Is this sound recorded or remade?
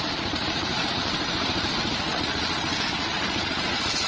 remade